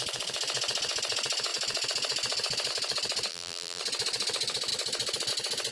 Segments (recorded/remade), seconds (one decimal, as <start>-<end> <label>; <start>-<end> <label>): 0.0-3.3 recorded; 3.3-3.8 remade; 3.8-5.7 recorded